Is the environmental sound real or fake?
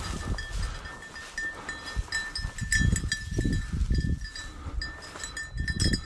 real